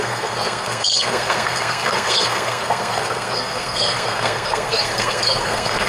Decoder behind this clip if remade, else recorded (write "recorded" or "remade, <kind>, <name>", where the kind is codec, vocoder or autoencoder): remade, codec, SNAC